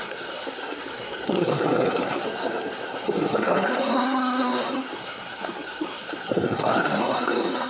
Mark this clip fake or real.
fake